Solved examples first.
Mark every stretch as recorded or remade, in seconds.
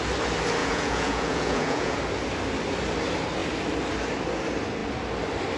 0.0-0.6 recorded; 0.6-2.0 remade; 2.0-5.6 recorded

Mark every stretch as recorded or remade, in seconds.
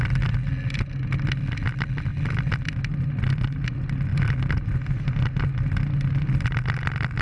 0.0-2.1 recorded; 2.1-2.6 remade; 2.6-4.1 recorded; 4.1-4.8 remade; 4.8-7.2 recorded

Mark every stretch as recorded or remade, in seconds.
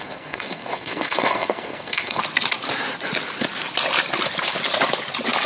0.0-2.2 remade; 2.2-5.5 recorded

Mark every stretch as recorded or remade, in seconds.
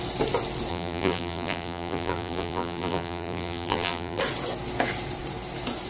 0.0-0.7 recorded; 0.7-4.2 remade; 4.2-5.9 recorded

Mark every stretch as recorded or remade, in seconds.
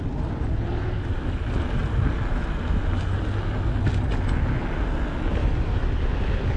0.0-6.6 recorded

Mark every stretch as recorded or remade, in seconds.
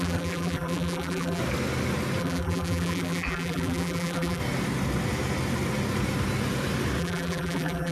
0.0-1.4 remade; 1.4-2.2 recorded; 2.2-4.4 remade; 4.4-7.0 recorded; 7.0-7.9 remade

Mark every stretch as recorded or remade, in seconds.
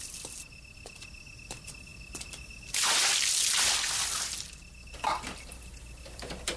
0.0-6.6 recorded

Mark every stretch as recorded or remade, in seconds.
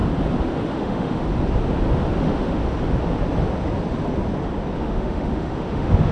0.0-0.7 recorded; 0.7-1.3 remade; 1.3-2.2 recorded; 2.2-2.6 remade; 2.6-4.8 recorded; 4.8-6.1 remade